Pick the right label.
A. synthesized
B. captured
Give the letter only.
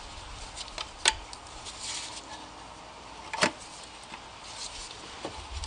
B